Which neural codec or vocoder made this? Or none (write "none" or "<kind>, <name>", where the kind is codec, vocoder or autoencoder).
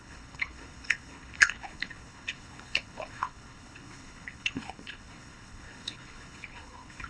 codec, HILCodec